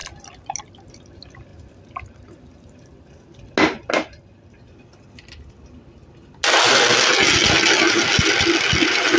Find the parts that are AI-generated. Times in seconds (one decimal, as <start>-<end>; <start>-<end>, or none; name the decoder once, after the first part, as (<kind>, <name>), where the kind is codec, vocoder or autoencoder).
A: none